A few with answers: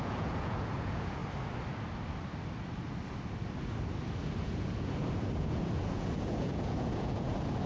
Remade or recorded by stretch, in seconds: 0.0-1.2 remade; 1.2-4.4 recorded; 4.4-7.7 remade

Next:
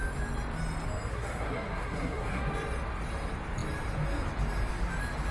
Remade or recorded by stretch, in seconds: 0.0-1.1 recorded; 1.1-2.4 remade; 2.4-5.3 recorded

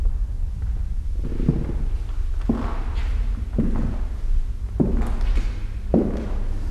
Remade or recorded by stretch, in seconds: 0.0-6.7 recorded